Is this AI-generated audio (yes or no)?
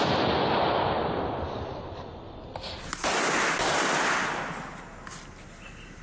no